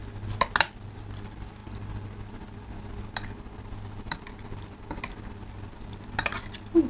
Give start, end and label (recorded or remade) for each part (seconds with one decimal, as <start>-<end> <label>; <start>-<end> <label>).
0.0-6.9 recorded